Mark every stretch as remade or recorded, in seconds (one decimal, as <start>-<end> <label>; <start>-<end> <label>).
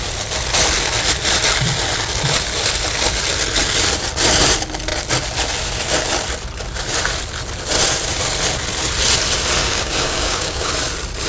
0.0-9.6 recorded; 9.6-10.7 remade; 10.7-11.3 recorded